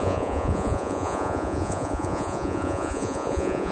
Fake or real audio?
fake